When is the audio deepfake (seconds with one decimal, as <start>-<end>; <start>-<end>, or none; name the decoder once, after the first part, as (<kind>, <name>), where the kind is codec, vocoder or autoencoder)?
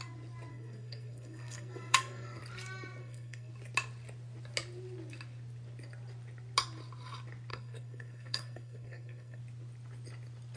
0.5-2.4 (codec, SNAC); 3.0-3.5; 7.5-9.4